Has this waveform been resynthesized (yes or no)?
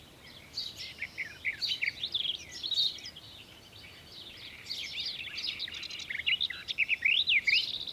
no